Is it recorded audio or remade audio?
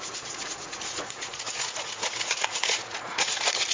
remade